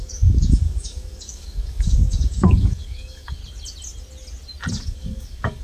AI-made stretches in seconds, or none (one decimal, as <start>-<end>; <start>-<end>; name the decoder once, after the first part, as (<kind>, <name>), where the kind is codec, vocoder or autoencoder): 0.0-3.4 (codec, DAC); 4.7-5.6